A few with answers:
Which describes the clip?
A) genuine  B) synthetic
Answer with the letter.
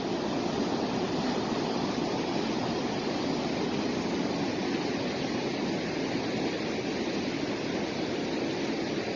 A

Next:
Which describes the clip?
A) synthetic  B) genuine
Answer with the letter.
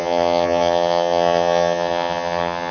A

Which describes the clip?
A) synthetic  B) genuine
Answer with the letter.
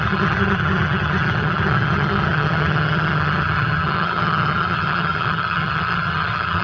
A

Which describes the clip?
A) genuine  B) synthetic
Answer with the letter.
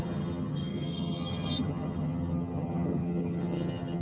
B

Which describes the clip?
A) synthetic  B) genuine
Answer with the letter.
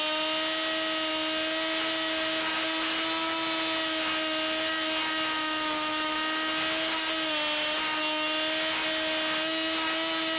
B